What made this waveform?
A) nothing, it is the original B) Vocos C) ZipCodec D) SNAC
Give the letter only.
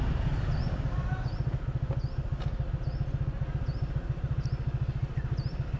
A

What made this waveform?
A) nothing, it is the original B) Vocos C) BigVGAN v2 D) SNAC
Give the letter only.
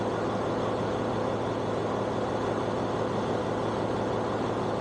A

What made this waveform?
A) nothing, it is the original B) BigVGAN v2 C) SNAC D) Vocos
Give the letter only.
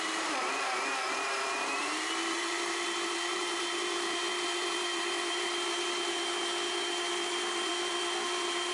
B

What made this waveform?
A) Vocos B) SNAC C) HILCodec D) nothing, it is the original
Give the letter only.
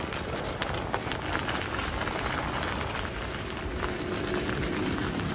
D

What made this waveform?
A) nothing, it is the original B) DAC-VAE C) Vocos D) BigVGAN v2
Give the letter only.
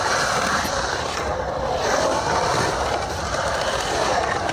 A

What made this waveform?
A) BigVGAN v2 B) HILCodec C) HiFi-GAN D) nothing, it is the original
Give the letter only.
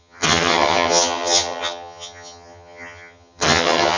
C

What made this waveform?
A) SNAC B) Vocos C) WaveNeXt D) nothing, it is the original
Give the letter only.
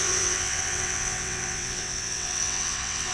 C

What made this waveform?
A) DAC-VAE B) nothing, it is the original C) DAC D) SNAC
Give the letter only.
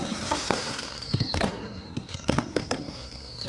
D